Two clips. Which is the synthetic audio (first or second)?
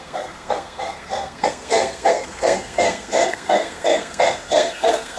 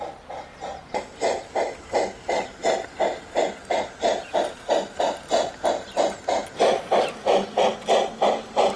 first